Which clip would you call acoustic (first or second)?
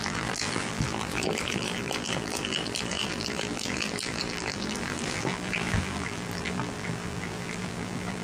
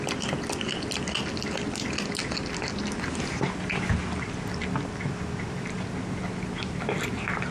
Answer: second